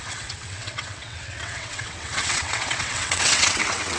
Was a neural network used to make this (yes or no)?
yes